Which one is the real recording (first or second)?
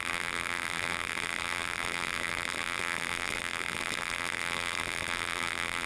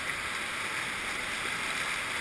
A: second